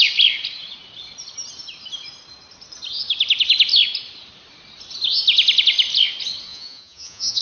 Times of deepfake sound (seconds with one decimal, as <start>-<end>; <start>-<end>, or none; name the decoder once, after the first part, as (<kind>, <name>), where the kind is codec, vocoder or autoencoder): 6.5-7.4 (vocoder, Vocos)